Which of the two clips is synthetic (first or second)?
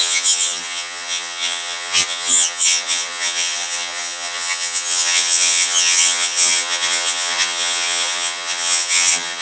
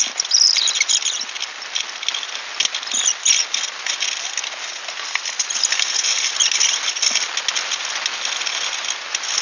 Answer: first